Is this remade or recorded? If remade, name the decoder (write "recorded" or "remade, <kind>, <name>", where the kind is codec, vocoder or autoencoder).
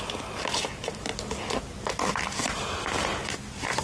recorded